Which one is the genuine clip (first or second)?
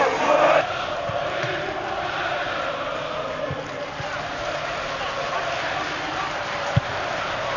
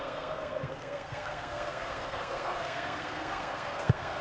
first